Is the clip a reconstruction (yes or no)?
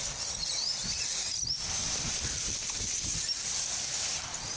yes